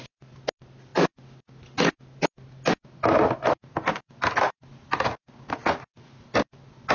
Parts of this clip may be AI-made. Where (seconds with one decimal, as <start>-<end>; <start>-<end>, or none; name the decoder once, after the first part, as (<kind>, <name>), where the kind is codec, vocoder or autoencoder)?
none